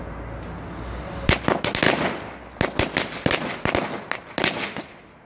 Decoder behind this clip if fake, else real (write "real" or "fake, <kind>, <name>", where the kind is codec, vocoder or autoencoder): real